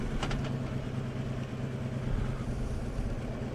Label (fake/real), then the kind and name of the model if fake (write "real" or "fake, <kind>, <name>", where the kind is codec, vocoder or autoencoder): real